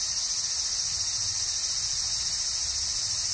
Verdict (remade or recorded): recorded